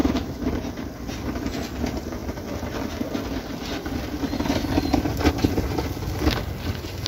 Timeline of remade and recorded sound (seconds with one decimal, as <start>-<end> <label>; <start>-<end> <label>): 0.0-0.5 remade; 0.5-7.1 recorded